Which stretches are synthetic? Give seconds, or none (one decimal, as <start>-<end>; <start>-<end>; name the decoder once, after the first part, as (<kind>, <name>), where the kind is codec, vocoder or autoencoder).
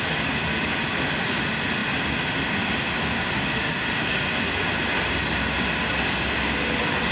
none